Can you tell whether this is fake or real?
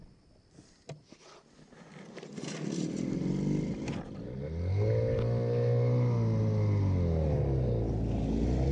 real